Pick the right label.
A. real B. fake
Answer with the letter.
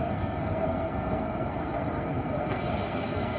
B